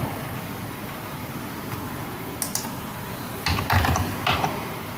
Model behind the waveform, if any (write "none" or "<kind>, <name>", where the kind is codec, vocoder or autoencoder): none